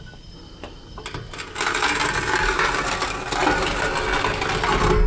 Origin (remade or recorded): recorded